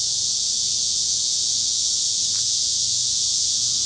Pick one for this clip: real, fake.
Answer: fake